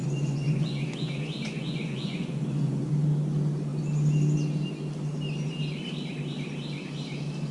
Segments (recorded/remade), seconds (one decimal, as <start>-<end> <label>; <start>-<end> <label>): 0.0-2.9 remade; 2.9-7.5 recorded

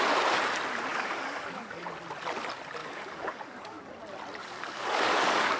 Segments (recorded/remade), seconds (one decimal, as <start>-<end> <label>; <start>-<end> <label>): 0.0-0.9 recorded; 0.9-1.9 remade; 1.9-2.8 recorded; 2.8-3.8 remade; 3.8-4.4 recorded; 4.4-5.6 remade